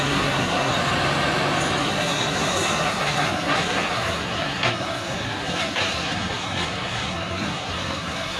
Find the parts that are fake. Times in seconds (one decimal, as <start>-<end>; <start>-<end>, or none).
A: 0.0-0.7; 1.8-8.4